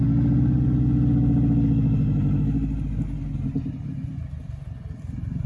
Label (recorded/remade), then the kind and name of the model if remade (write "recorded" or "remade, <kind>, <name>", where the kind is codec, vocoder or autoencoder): recorded